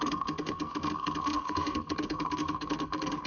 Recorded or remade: remade